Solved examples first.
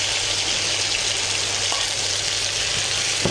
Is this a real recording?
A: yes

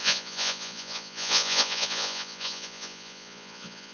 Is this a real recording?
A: no